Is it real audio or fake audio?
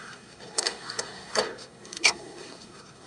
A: fake